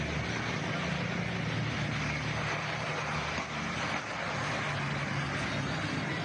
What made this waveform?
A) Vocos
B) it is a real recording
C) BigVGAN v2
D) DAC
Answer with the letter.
B